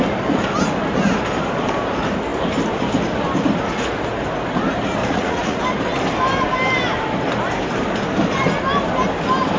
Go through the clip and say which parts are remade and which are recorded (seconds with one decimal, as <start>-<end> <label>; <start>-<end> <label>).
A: 0.0-5.0 recorded; 5.0-5.6 remade; 5.6-9.6 recorded